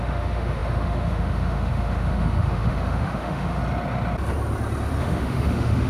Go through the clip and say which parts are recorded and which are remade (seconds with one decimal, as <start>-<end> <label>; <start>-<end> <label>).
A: 0.0-3.6 remade; 3.6-5.0 recorded; 5.0-5.9 remade